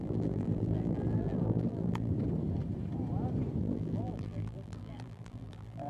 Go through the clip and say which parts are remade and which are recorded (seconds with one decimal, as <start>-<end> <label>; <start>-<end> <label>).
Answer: 0.0-2.1 remade; 2.1-3.6 recorded; 3.6-5.9 remade